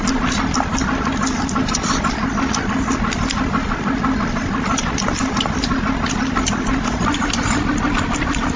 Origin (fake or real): real